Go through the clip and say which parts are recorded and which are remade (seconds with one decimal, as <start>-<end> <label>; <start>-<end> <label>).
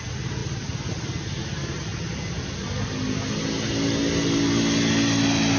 0.0-5.6 recorded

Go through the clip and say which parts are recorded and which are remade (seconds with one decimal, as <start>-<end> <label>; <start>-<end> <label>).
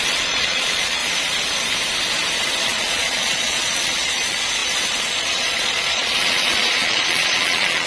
0.0-1.0 remade; 1.0-2.6 recorded; 2.6-7.9 remade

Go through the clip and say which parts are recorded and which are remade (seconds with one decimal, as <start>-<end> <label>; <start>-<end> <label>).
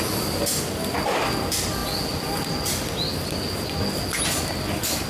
0.0-5.1 recorded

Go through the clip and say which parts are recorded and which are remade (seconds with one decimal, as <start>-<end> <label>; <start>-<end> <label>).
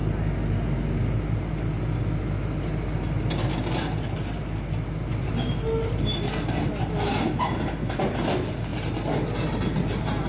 0.0-10.3 recorded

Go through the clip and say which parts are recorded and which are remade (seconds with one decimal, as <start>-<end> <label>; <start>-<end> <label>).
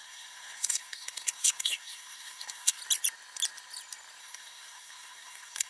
0.0-2.8 remade; 2.8-4.2 recorded; 4.2-5.7 remade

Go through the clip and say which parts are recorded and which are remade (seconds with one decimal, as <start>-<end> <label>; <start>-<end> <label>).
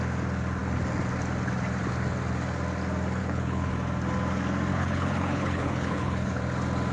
0.0-3.2 recorded; 3.2-3.7 remade; 3.7-4.7 recorded; 4.7-6.4 remade; 6.4-6.9 recorded